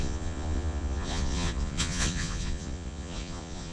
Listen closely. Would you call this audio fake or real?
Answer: fake